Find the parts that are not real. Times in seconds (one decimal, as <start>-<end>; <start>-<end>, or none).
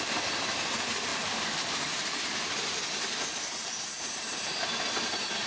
0.0-5.5